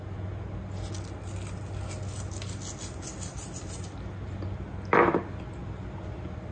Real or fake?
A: real